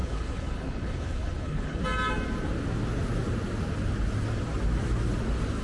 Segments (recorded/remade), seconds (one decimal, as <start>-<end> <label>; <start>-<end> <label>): 0.0-1.8 remade; 1.8-5.6 recorded